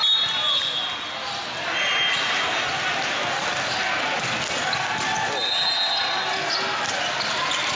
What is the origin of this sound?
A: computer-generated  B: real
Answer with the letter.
B